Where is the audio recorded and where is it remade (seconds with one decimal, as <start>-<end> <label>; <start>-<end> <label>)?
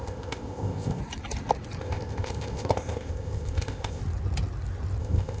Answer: 0.0-1.0 remade; 1.0-1.8 recorded; 1.8-4.0 remade; 4.0-5.0 recorded; 5.0-5.4 remade